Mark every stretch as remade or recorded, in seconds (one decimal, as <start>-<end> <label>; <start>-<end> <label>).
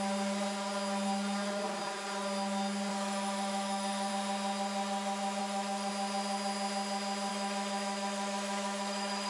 0.0-2.9 recorded; 2.9-4.1 remade; 4.1-5.4 recorded; 5.4-5.9 remade; 5.9-7.3 recorded; 7.3-9.3 remade